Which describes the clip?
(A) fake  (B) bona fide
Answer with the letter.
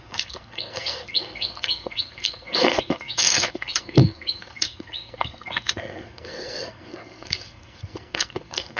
A